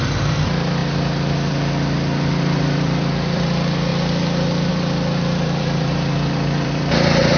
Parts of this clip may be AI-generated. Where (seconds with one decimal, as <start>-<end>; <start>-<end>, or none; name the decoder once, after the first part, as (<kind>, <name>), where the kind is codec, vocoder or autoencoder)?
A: 0.0-0.8 (vocoder, BigVGAN v2); 1.5-3.9; 4.7-7.4